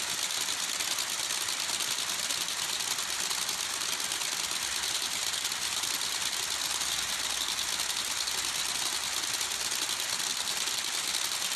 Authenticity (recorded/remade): recorded